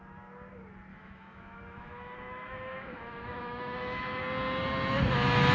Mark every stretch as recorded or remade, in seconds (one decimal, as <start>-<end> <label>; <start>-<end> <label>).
0.0-0.9 recorded; 0.9-4.2 remade; 4.2-5.5 recorded